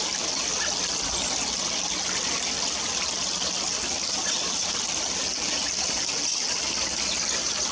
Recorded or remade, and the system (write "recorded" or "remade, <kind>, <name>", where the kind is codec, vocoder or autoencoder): recorded